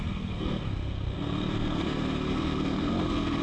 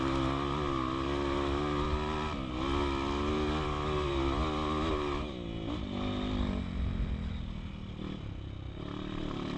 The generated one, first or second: first